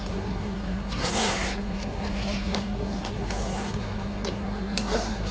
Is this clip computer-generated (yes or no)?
yes